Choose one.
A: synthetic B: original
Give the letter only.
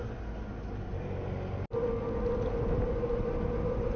B